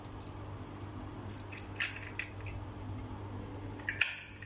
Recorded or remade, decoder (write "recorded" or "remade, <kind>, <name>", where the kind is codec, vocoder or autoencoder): recorded